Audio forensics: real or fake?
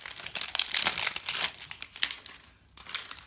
real